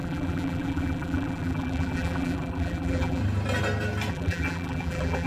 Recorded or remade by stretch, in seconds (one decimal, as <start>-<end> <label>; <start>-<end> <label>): 0.0-3.2 remade; 3.2-4.1 recorded; 4.1-5.3 remade